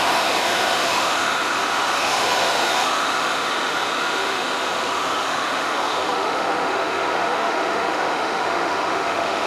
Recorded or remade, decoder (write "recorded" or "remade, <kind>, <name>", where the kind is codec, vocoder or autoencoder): remade, autoencoder, DAC-VAE